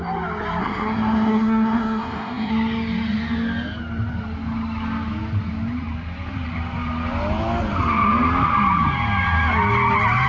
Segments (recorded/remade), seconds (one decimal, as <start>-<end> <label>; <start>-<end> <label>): 0.0-0.6 recorded; 0.6-2.5 remade; 2.5-10.3 recorded